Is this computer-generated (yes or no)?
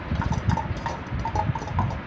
no